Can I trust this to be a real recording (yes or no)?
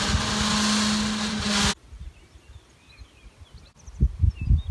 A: yes